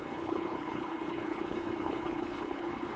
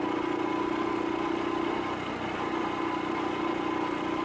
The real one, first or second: second